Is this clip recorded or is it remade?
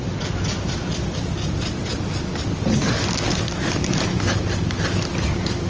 recorded